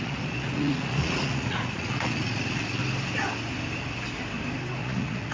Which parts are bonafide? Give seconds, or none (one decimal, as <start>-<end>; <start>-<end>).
2.8-4.8